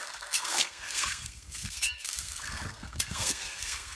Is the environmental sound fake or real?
fake